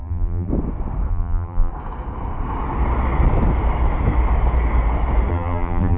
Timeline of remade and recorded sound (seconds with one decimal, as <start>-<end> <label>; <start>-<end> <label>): 0.0-0.5 remade; 0.5-1.1 recorded; 1.1-1.7 remade; 1.7-5.3 recorded; 5.3-6.0 remade